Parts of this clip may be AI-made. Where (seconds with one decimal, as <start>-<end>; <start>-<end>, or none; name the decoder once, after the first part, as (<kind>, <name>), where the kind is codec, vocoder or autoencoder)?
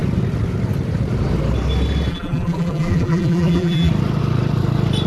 2.1-3.9 (vocoder, BigVGAN v2)